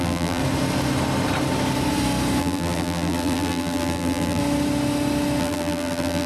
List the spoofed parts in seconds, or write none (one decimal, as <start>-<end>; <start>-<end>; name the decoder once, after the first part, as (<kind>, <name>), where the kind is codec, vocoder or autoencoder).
0.0-0.4 (vocoder, BigVGAN v2); 2.4-4.4; 5.4-6.3